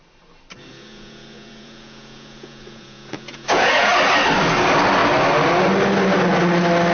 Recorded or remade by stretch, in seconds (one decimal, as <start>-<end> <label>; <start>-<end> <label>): 0.0-0.7 recorded; 0.7-3.9 remade; 3.9-6.9 recorded